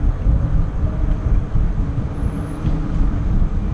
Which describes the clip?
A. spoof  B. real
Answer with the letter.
B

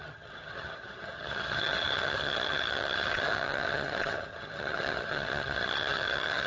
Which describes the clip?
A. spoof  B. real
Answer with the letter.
A